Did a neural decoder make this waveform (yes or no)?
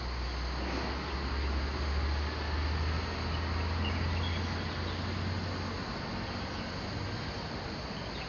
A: no